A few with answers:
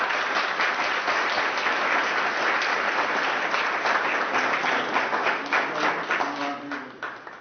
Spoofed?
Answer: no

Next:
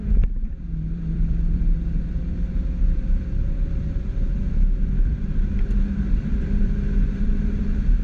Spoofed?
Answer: yes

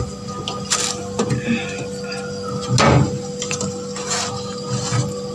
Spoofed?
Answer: no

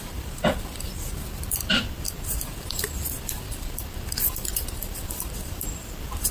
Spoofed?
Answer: yes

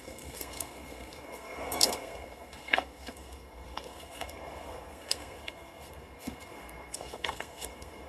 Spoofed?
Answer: yes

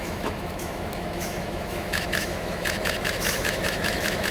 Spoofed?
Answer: yes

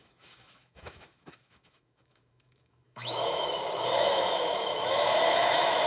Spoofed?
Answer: yes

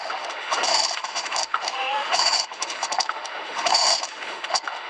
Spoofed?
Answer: yes